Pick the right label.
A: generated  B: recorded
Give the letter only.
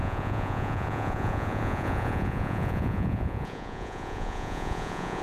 A